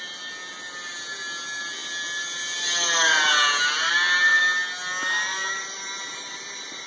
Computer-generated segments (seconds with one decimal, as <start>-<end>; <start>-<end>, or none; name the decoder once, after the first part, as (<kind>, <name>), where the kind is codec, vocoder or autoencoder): 5.3-6.9 (vocoder, BigVGAN v2)